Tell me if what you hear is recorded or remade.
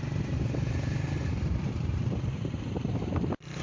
remade